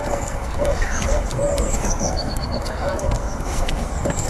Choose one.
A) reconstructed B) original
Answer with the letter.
A